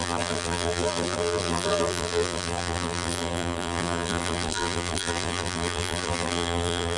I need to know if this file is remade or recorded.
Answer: remade